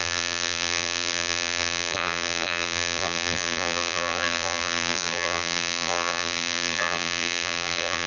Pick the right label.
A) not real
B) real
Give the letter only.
A